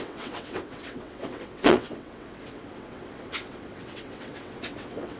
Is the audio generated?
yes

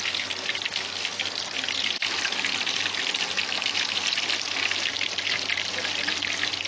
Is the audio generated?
no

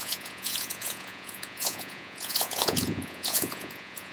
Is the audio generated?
yes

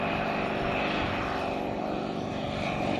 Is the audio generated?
no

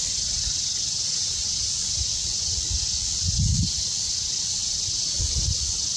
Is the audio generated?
no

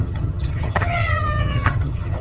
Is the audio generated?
yes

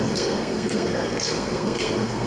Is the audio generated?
yes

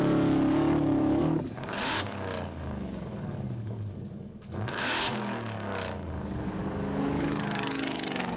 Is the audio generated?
yes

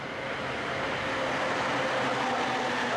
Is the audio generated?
no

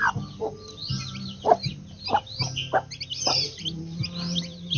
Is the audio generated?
no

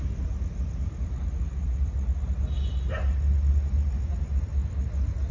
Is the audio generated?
no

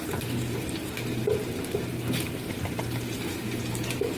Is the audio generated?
yes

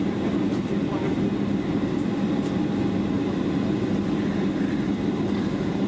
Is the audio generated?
no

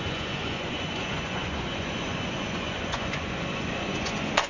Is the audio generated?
yes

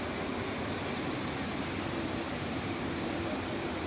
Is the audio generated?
no